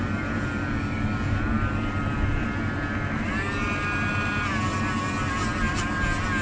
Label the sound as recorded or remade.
recorded